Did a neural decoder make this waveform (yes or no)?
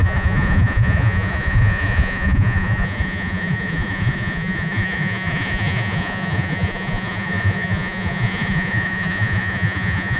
yes